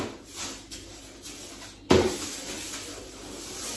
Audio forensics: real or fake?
real